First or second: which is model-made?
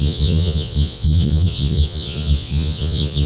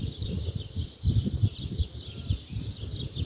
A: first